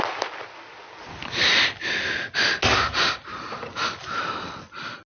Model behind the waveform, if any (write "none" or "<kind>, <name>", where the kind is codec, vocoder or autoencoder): none